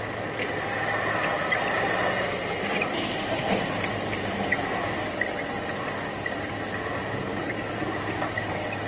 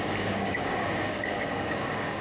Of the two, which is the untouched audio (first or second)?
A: first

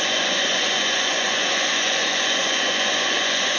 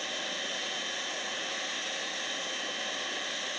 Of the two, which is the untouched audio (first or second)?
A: second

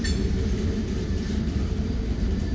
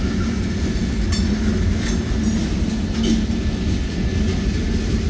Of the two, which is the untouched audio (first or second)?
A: second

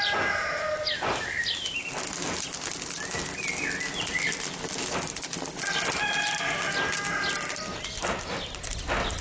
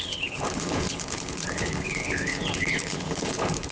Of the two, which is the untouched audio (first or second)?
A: first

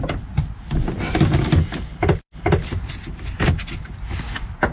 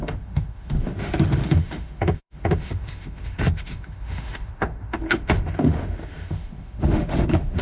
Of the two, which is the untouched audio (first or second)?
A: first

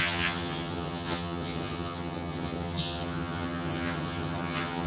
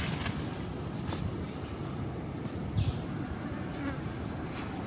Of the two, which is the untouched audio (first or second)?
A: second